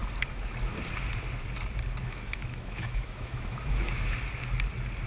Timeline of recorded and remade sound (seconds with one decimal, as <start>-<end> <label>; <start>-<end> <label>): 0.0-2.0 recorded; 2.0-4.0 remade; 4.0-5.1 recorded

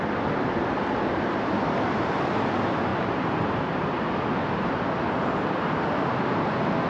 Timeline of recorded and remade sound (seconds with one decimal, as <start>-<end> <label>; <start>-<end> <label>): 0.0-2.9 recorded; 2.9-3.5 remade; 3.5-6.9 recorded

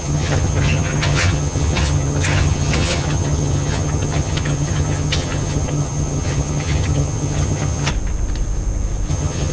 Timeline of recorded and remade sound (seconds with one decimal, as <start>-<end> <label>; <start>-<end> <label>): 0.0-7.9 remade; 7.9-9.1 recorded; 9.1-9.5 remade

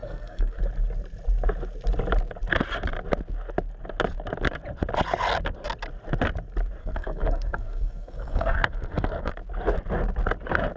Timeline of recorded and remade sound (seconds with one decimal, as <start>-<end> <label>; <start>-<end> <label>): 0.0-0.6 remade; 0.6-6.8 recorded; 6.8-9.3 remade; 9.3-10.8 recorded

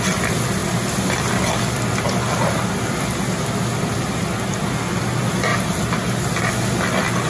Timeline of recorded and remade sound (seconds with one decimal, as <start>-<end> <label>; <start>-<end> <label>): 0.0-7.3 recorded

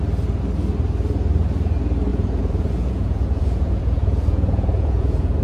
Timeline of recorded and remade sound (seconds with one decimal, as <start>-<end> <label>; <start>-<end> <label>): 0.0-2.1 recorded; 2.1-5.4 remade

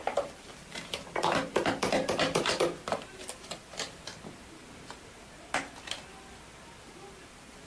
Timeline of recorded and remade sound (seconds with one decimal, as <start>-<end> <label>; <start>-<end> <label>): 0.0-4.1 remade; 4.1-7.3 recorded; 7.3-7.7 remade